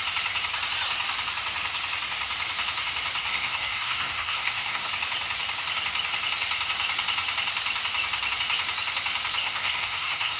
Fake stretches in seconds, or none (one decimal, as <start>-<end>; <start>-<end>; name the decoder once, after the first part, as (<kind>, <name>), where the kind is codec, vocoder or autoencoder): 3.2-4.9 (codec, SNAC); 9.4-10.4